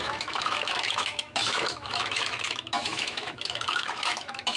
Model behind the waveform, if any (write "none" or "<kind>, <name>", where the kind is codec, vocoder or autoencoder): autoencoder, DAC-VAE